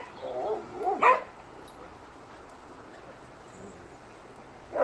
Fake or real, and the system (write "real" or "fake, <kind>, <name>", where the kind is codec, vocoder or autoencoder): real